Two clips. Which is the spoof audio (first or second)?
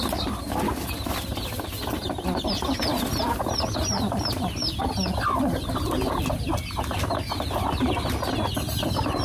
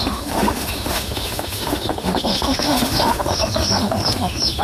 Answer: second